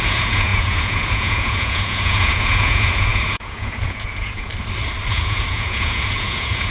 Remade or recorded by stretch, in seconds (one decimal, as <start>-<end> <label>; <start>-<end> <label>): 0.0-4.5 remade; 4.5-5.1 recorded; 5.1-6.7 remade